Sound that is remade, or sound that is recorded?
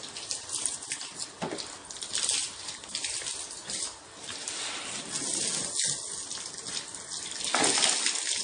recorded